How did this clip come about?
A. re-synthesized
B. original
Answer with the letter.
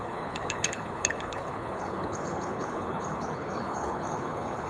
A